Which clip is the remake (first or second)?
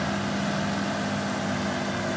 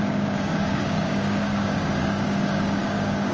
second